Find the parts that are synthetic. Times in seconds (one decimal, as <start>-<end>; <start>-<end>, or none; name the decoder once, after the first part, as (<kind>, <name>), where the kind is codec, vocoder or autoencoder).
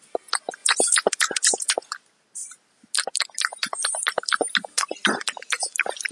0.6-1.9 (vocoder, Vocos)